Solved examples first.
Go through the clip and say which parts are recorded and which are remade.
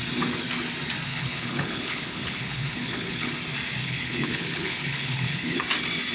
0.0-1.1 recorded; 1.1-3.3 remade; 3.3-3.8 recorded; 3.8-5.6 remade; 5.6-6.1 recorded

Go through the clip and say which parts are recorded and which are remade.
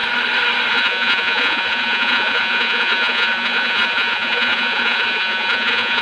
0.0-0.7 recorded; 0.7-6.0 remade